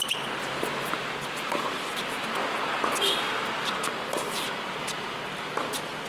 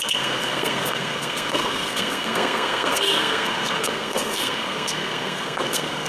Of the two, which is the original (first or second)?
first